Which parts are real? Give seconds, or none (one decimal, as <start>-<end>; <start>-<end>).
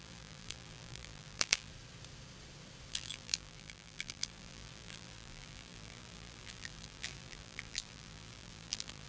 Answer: 1.7-2.9